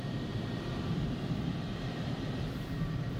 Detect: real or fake fake